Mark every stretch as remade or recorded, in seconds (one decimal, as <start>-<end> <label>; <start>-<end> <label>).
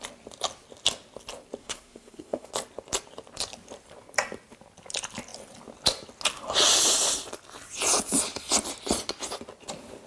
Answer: 0.0-1.6 recorded; 1.6-2.5 remade; 2.5-10.1 recorded